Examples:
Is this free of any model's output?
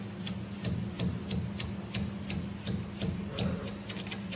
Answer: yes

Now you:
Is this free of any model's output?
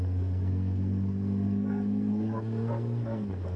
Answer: no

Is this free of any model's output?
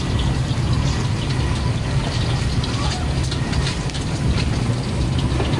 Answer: yes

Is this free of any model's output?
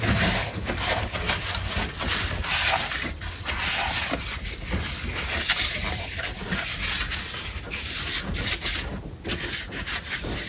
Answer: yes